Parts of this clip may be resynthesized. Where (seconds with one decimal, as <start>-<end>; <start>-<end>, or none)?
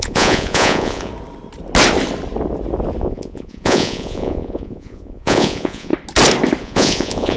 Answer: 0.0-1.1; 3.0-5.9; 6.6-7.4